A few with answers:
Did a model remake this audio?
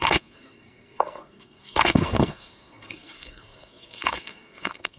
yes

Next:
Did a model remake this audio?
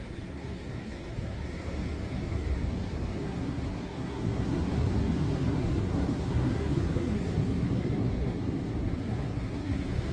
yes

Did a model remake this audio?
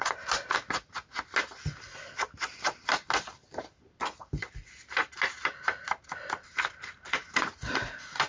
no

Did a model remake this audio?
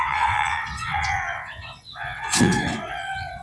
yes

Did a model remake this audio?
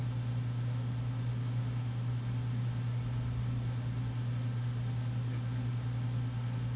no